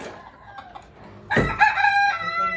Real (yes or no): yes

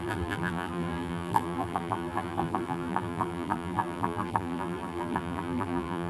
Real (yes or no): no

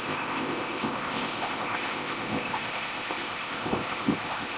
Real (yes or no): no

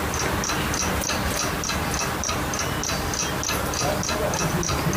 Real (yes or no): yes